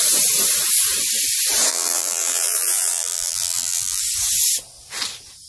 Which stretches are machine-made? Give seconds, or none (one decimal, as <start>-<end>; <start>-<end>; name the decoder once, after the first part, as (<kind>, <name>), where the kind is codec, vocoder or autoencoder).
1.7-4.0 (vocoder, BigVGAN v2)